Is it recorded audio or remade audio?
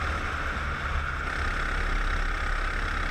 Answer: recorded